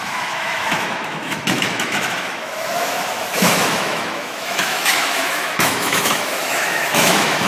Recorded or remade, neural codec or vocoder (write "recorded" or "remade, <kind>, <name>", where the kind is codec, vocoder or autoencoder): remade, autoencoder, DAC-VAE